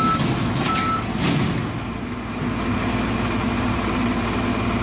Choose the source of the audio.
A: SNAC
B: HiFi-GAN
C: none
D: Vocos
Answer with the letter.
C